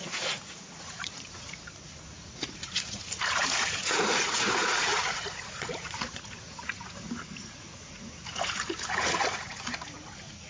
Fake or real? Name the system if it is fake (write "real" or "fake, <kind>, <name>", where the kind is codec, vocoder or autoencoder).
fake, vocoder, Vocos